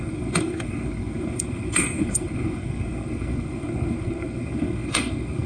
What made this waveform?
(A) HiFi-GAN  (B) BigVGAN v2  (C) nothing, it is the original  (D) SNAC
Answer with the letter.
D